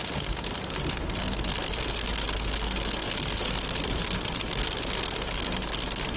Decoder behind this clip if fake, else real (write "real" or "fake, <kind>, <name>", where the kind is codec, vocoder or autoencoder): real